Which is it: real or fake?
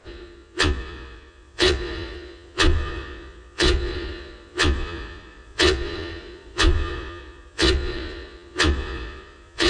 fake